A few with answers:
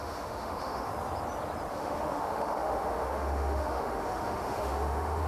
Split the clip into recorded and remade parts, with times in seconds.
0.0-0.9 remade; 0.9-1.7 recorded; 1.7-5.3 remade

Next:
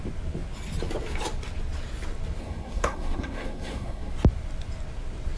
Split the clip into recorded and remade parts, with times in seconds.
0.0-2.4 recorded; 2.4-4.1 remade; 4.1-5.4 recorded